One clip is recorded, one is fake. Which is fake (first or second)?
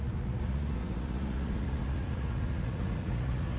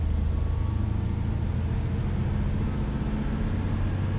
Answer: first